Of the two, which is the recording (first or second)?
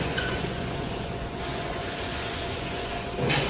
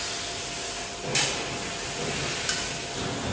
second